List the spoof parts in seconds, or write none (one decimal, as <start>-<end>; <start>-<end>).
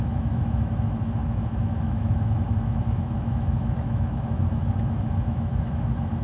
0.0-6.2